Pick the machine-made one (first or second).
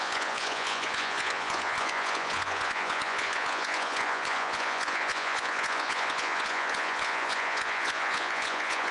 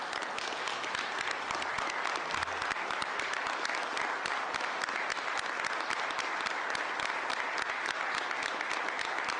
first